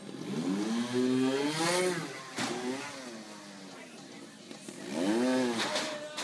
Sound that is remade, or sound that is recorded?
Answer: recorded